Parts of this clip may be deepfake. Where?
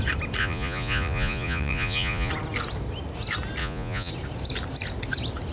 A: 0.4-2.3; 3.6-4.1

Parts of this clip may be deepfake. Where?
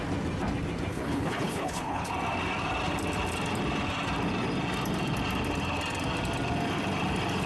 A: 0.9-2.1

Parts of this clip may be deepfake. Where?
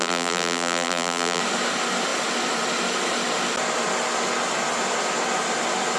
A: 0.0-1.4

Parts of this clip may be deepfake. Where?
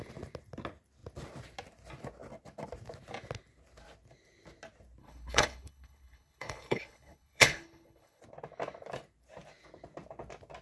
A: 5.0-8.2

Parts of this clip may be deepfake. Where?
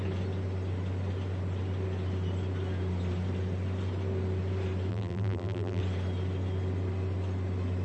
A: 4.9-5.8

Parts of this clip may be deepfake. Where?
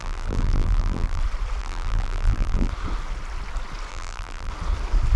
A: 0.0-1.2; 1.6-2.7; 3.9-4.5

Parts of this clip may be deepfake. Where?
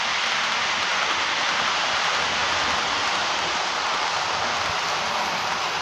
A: none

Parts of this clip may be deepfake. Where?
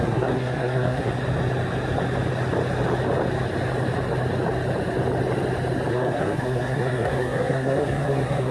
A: 0.0-1.1; 5.9-8.5